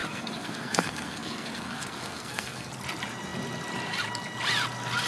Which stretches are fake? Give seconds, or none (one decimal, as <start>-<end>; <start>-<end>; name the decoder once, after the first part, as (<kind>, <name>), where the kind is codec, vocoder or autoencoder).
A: 0.0-2.7 (codec, SNAC)